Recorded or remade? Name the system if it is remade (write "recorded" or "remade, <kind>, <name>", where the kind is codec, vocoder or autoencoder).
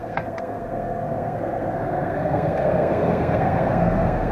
remade, codec, SNAC